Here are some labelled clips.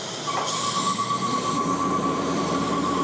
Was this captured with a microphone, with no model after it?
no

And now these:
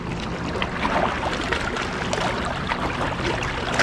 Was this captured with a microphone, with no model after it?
yes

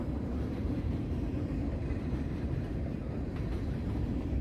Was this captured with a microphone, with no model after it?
no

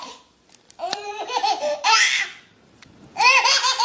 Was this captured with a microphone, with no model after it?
no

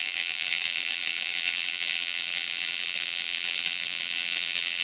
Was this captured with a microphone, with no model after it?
no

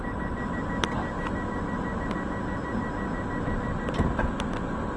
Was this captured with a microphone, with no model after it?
yes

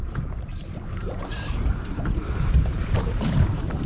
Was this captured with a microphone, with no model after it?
no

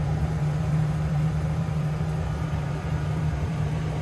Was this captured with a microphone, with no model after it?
no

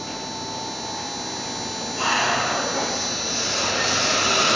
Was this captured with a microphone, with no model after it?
yes